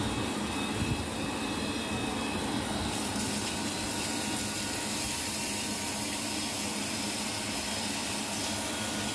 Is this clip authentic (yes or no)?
yes